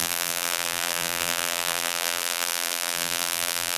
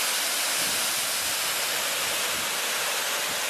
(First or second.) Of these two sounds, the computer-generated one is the first